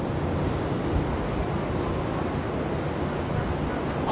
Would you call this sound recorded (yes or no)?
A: yes